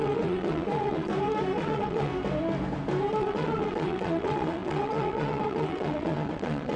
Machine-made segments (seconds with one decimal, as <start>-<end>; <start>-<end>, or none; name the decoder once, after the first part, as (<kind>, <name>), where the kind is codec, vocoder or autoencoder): 0.0-1.1 (vocoder, WaveNeXt); 1.6-2.1; 3.2-6.8